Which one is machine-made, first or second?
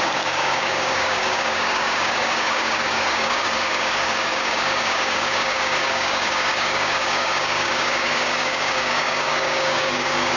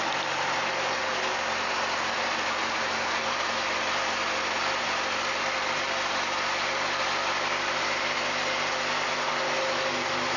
first